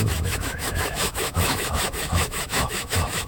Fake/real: fake